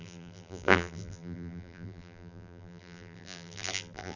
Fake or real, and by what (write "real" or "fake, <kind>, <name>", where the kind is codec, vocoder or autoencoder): fake, vocoder, BigVGAN v2